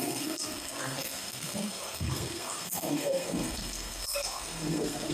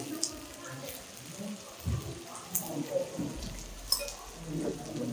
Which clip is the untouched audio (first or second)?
second